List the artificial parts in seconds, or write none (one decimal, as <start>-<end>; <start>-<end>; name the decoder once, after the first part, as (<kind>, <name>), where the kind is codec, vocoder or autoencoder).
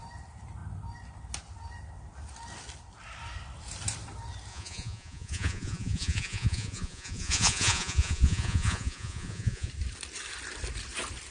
4.5-9.7 (vocoder, Vocos)